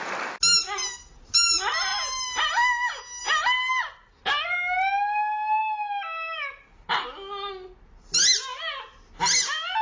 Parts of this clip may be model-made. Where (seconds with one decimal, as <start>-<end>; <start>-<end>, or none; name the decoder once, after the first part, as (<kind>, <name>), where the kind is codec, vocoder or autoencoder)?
none